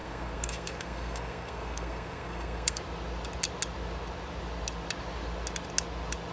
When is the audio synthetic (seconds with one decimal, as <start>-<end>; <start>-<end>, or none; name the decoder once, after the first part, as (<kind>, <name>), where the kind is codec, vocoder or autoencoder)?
0.0-2.8 (codec, SNAC)

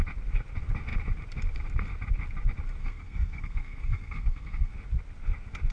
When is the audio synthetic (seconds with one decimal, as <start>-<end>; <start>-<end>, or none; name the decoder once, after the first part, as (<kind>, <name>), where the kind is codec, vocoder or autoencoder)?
2.8-4.7 (codec, SNAC)

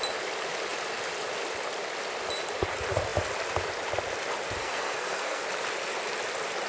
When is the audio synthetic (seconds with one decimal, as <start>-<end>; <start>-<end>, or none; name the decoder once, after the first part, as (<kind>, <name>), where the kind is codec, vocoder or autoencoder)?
4.6-5.4 (codec, SNAC)

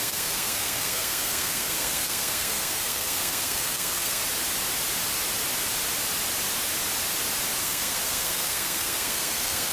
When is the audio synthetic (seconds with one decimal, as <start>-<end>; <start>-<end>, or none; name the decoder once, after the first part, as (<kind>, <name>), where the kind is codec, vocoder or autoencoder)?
0.0-4.2 (codec, SNAC); 7.6-9.7

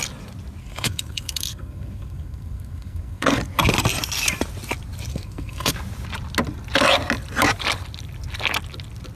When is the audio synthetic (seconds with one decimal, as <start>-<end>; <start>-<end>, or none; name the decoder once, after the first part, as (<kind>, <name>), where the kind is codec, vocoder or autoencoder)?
0.6-3.4 (codec, SNAC); 5.1-5.7

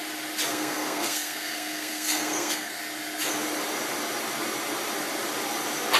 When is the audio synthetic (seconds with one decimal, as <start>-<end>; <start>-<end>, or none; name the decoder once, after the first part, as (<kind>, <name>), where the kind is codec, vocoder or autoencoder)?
0.5-2.8 (codec, SNAC)